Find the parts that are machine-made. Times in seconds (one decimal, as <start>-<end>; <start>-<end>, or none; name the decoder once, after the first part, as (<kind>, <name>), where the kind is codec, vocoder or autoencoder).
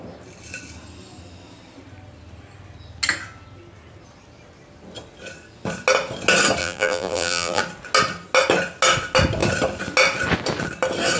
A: 6.6-7.6 (vocoder, BigVGAN v2)